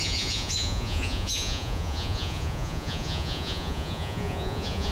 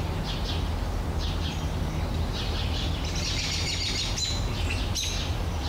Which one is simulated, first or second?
first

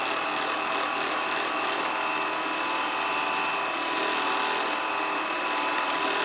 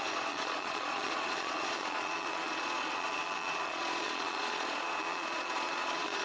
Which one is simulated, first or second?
second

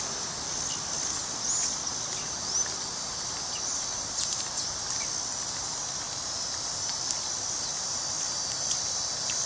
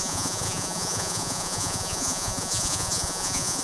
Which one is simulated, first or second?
second